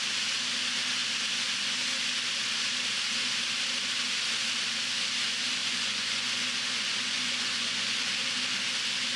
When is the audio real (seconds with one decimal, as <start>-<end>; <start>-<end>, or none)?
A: 0.0-5.6; 8.1-9.2